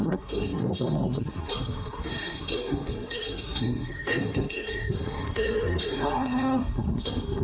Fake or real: fake